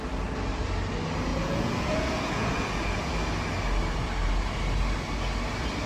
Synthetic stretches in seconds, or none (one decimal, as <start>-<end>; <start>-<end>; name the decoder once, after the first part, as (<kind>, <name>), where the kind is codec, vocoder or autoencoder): 1.3-3.1 (vocoder, Vocos)